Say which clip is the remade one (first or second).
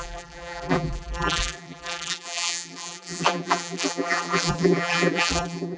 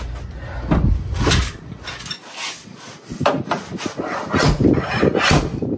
first